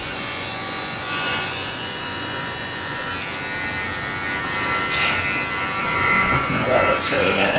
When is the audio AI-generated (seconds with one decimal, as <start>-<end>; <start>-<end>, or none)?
0.0-3.1; 5.8-7.6